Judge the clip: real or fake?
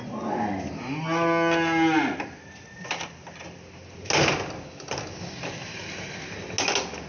real